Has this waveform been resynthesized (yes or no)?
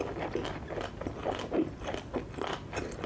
no